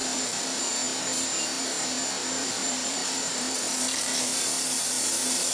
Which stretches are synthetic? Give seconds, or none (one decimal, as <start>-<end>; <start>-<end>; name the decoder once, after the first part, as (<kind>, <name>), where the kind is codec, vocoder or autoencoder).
0.0-0.6 (vocoder, BigVGAN v2); 2.4-4.4